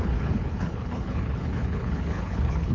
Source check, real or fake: fake